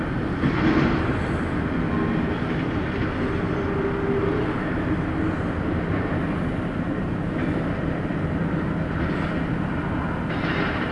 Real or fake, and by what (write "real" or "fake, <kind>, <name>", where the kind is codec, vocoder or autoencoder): real